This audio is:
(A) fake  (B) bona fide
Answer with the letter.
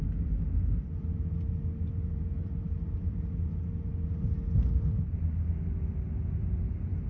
B